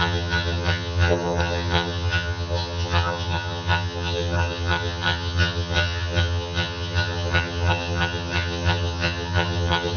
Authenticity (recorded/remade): remade